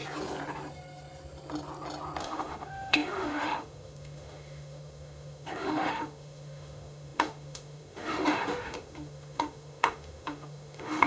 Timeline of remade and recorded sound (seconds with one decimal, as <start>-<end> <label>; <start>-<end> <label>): 0.0-2.2 recorded; 2.2-11.1 remade